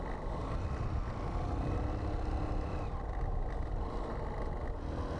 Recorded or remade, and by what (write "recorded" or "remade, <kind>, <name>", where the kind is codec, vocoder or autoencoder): recorded